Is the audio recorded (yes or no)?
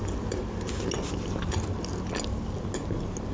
yes